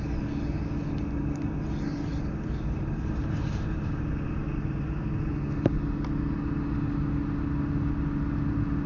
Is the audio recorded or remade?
recorded